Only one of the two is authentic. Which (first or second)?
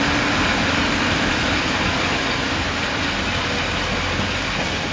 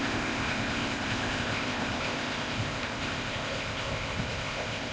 first